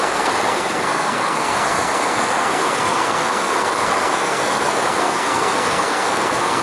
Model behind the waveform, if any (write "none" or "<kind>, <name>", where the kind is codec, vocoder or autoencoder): codec, SNAC